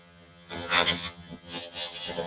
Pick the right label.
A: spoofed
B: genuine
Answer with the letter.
A